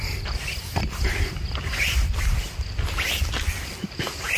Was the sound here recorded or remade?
recorded